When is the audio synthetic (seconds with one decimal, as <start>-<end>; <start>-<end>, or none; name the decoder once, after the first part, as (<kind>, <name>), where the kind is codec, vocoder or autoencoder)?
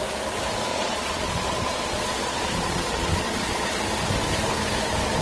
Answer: 0.7-3.8 (vocoder, Vocos)